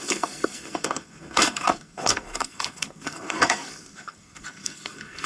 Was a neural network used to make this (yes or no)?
yes